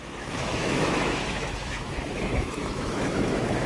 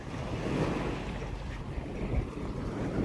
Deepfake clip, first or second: first